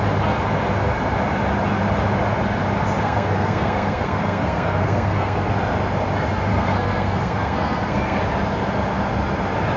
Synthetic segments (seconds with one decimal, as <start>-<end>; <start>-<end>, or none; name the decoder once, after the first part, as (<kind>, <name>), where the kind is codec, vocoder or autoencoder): 3.0-5.5 (codec, SNAC); 6.5-8.2